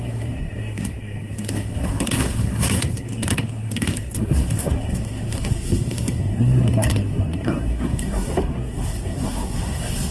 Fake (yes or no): yes